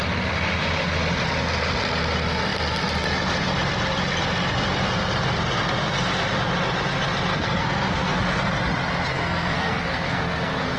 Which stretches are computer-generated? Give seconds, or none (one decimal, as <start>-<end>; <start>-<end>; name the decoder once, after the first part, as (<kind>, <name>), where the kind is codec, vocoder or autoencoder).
7.3-8.2 (codec, SNAC); 9.1-10.8